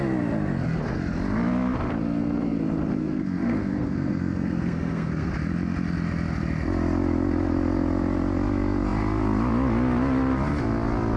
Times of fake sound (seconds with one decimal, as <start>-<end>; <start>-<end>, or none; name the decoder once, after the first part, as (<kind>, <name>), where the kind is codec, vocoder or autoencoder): 3.0-5.3 (codec, SNAC)